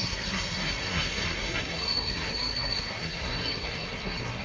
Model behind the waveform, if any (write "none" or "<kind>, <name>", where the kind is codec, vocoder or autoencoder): codec, SNAC